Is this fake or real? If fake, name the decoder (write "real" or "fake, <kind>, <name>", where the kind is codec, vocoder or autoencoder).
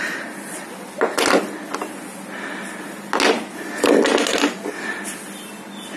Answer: real